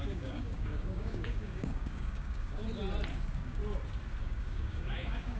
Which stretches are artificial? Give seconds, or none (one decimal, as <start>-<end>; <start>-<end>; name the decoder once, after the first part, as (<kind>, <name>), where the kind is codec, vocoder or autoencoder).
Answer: 0.0-2.6 (codec, DAC); 3.1-3.6; 4.2-5.4